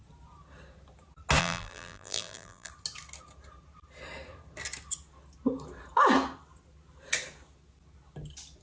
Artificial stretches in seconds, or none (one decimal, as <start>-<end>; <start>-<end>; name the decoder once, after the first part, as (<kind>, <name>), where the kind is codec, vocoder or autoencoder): 1.4-2.7 (vocoder, BigVGAN v2)